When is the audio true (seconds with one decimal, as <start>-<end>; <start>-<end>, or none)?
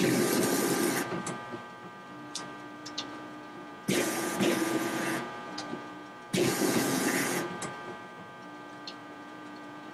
0.0-2.8; 7.5-9.0